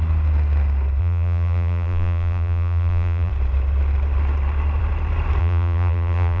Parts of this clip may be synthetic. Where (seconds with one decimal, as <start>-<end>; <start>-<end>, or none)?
1.0-3.3; 5.4-6.4